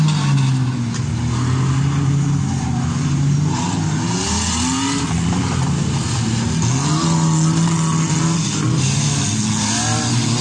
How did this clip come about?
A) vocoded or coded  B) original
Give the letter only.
B